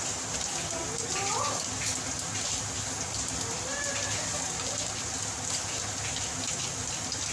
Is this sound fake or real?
real